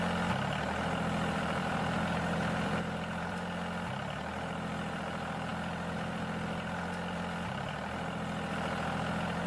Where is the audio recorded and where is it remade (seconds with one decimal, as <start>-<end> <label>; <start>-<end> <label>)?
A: 0.0-1.6 recorded; 1.6-3.5 remade; 3.5-5.5 recorded; 5.5-7.7 remade; 7.7-9.5 recorded